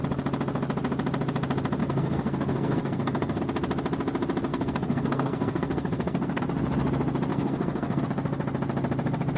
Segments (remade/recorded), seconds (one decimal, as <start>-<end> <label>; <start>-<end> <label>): 0.0-1.8 recorded; 1.8-3.4 remade; 3.4-4.5 recorded; 4.5-6.4 remade; 6.4-7.3 recorded; 7.3-8.0 remade; 8.0-9.4 recorded